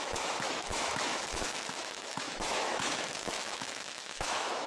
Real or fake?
fake